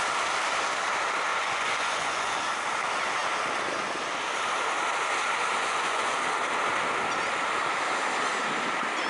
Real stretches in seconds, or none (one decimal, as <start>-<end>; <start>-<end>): 0.0-1.3; 2.4-5.6; 6.2-9.1